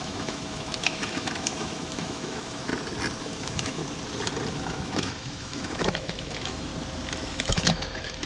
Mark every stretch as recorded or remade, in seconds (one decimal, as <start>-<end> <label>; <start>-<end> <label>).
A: 0.0-2.7 remade; 2.7-3.2 recorded; 3.2-3.8 remade; 3.8-4.5 recorded; 4.5-6.7 remade; 6.7-7.3 recorded; 7.3-8.3 remade